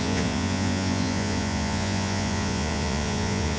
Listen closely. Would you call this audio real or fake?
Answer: fake